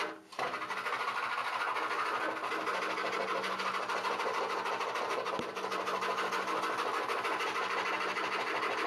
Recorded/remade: recorded